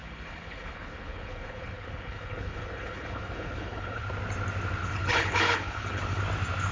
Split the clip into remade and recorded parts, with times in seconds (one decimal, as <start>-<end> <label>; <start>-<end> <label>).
0.0-4.0 remade; 4.0-4.8 recorded; 4.8-6.2 remade; 6.2-6.7 recorded